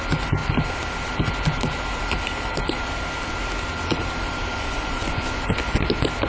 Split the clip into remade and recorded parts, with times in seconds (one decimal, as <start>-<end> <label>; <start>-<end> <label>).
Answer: 0.0-4.5 recorded; 4.5-5.5 remade; 5.5-6.3 recorded